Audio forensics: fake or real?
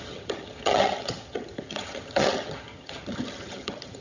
fake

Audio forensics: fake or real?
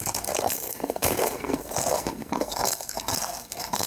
fake